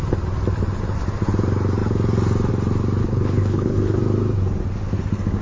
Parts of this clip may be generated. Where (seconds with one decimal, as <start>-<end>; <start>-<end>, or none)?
3.0-4.0